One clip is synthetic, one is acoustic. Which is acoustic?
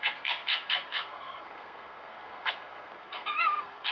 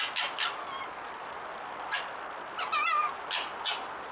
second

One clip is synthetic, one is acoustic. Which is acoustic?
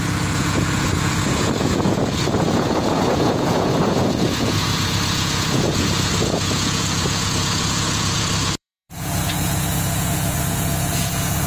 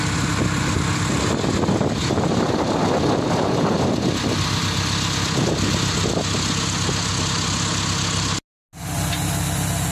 second